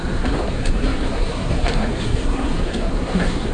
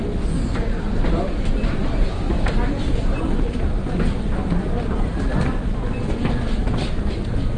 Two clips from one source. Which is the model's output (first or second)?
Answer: first